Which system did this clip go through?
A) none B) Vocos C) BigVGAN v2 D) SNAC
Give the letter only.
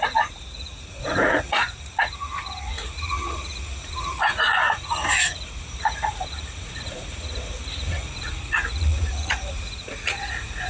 B